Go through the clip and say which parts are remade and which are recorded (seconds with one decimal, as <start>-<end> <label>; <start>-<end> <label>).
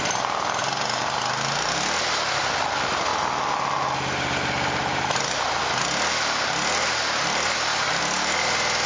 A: 0.0-0.6 recorded; 0.6-1.2 remade; 1.2-8.9 recorded